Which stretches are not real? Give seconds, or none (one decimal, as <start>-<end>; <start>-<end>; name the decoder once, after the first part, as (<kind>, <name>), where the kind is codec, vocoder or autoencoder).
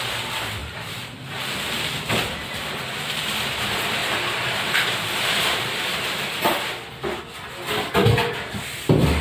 0.6-3.5 (vocoder, BigVGAN v2); 4.0-6.7; 8.0-8.6